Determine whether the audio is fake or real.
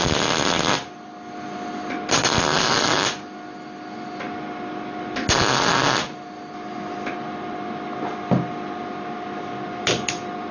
real